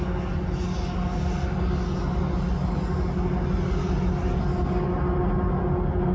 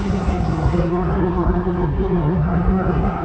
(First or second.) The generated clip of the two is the second